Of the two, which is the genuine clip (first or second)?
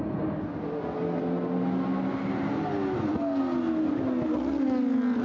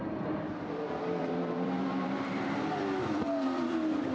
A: first